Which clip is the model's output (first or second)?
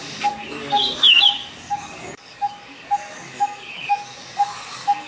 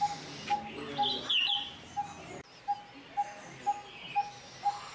first